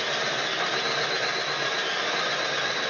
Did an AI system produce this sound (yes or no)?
no